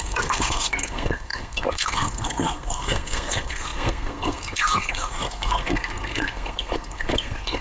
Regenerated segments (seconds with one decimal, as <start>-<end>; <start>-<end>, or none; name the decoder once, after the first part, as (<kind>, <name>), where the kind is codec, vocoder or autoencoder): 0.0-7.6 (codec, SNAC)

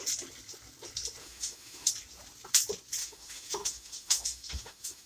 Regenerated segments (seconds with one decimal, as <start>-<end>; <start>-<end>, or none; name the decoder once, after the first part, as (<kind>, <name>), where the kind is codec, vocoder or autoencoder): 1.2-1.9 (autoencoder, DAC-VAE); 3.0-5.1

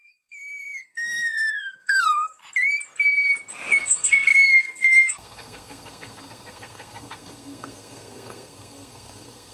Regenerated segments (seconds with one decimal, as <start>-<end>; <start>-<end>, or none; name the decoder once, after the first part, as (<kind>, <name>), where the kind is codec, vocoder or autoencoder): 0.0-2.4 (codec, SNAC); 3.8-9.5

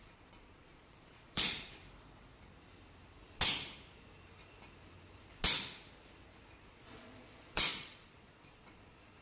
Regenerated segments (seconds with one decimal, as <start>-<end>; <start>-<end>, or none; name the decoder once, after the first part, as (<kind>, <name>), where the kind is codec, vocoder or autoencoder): 0.0-1.8 (vocoder, Vocos); 6.6-9.2

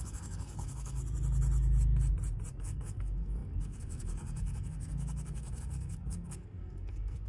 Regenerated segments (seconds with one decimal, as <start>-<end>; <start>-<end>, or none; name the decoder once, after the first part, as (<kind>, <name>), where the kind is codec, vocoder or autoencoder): 0.0-1.0 (codec, SNAC); 2.5-7.3

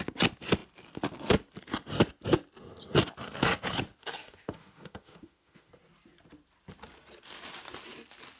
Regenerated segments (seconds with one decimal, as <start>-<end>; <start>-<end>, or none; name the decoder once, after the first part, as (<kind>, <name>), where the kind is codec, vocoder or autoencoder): 4.0-5.7 (autoencoder, DAC-VAE)

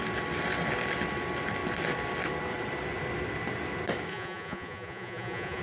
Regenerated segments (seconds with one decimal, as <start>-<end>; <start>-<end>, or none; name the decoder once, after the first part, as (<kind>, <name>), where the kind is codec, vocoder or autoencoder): 4.1-5.6 (vocoder, Vocos)

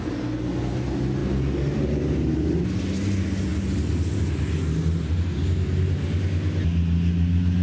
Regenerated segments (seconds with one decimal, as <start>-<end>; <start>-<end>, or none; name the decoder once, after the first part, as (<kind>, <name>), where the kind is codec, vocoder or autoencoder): none